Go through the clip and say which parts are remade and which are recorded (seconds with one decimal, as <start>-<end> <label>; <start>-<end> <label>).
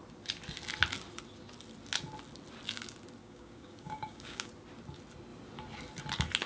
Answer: 0.0-3.2 recorded; 3.2-4.5 remade; 4.5-6.5 recorded